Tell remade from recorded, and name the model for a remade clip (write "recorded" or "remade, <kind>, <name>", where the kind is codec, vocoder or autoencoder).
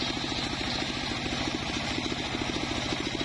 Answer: recorded